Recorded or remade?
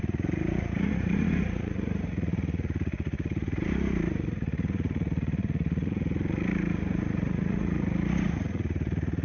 remade